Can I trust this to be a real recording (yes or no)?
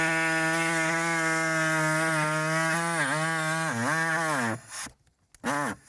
yes